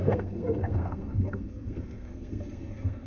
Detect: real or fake fake